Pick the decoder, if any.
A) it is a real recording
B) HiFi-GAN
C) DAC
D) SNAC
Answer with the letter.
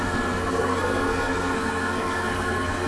D